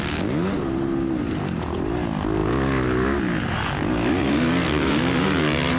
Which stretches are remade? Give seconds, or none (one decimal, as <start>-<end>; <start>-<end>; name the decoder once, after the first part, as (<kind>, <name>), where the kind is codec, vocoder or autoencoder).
none